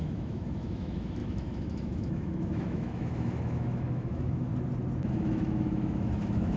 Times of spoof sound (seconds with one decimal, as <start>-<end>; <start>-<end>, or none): 0.0-4.5; 5.1-6.6